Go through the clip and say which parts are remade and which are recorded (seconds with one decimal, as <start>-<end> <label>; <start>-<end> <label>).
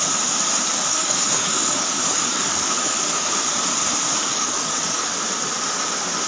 0.0-0.9 recorded; 0.9-3.3 remade; 3.3-4.3 recorded; 4.3-5.2 remade; 5.2-6.3 recorded